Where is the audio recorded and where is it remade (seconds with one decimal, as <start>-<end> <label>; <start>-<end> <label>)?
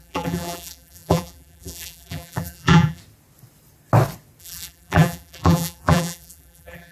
0.0-3.0 remade; 3.0-4.4 recorded; 4.4-6.9 remade